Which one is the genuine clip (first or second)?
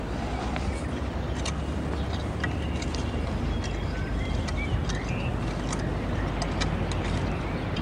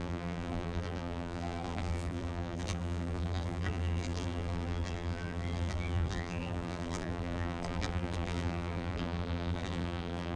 first